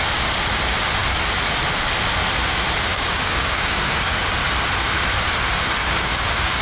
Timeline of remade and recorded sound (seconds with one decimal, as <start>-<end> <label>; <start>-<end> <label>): 0.0-2.9 recorded; 2.9-4.2 remade; 4.2-5.8 recorded; 5.8-6.6 remade